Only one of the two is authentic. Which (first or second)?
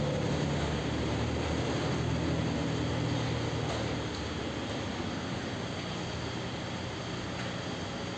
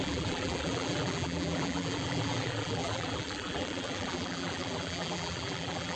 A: first